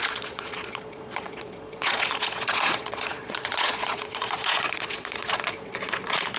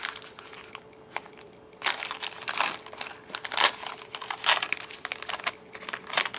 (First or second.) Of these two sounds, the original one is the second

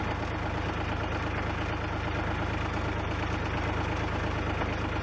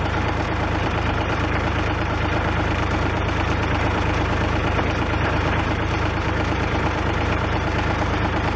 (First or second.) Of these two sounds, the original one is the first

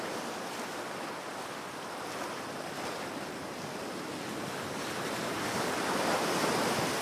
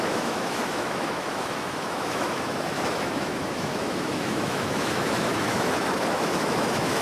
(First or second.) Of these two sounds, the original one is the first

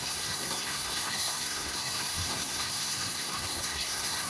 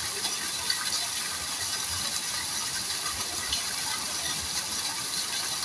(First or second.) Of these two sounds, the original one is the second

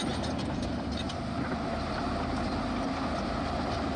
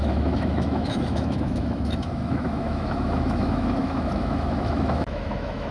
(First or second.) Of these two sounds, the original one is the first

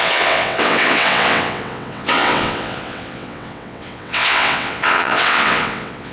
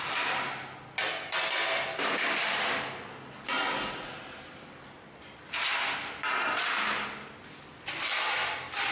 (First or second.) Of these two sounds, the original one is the second